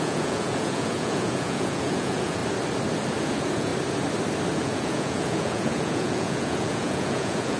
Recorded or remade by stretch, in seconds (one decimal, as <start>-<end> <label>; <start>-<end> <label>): 0.0-2.4 remade; 2.4-3.2 recorded; 3.2-3.7 remade; 3.7-4.6 recorded; 4.6-7.6 remade